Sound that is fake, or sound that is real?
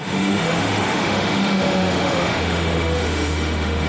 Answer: fake